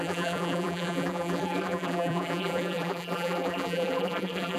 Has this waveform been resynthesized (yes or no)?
yes